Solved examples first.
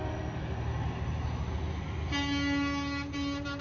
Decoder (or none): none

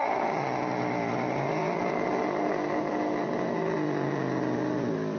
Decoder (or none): none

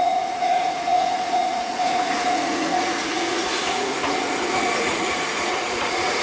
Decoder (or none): vocoder, Vocos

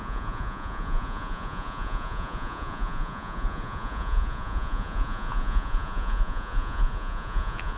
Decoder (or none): vocoder, Vocos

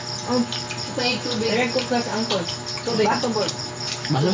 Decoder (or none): none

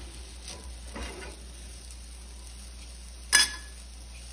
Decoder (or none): none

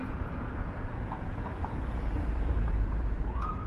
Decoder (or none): vocoder, Vocos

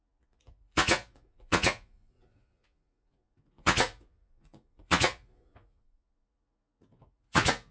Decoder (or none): vocoder, Vocos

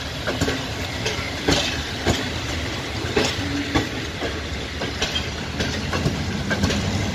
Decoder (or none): none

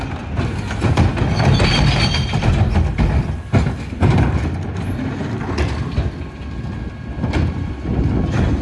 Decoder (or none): none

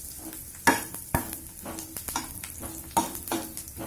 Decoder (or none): none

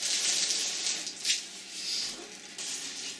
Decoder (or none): none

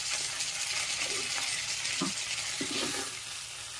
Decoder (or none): none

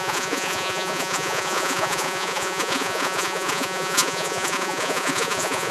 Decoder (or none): vocoder, Vocos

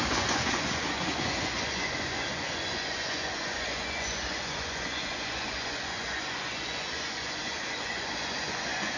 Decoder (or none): vocoder, Vocos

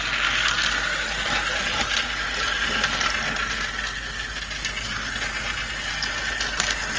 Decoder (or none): none